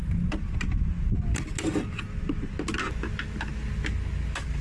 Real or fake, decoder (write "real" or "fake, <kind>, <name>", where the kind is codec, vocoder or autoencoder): real